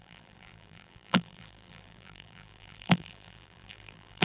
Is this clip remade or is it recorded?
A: remade